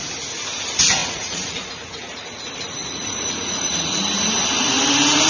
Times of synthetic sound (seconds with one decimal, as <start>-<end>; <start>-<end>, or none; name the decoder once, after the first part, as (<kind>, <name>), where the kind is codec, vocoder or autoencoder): 1.0-2.4 (vocoder, Vocos); 2.8-4.0